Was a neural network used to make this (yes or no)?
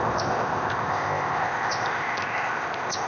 yes